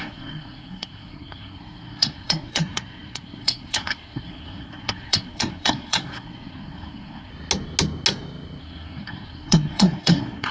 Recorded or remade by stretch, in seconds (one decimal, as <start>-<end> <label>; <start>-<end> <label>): 0.0-7.3 remade; 7.3-8.6 recorded; 8.6-10.5 remade